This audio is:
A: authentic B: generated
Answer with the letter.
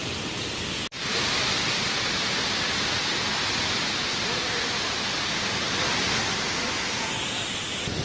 A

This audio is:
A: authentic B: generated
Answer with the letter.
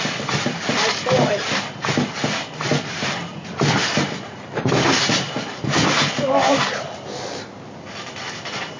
A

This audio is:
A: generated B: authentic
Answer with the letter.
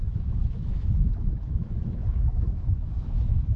A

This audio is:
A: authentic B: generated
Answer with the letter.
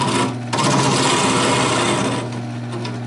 A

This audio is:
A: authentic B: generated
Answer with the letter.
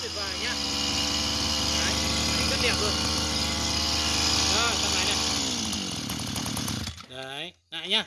A